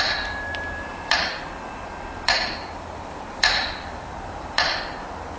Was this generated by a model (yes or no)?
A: yes